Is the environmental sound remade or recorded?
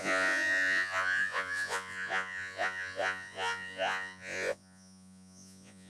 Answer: remade